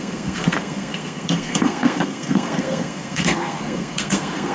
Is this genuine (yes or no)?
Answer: no